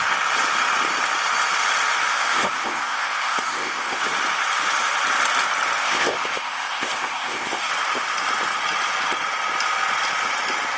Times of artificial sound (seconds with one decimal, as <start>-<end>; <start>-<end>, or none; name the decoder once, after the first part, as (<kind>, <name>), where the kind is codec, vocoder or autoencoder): 2.1-4.0 (codec, ZipCodec); 5.8-7.7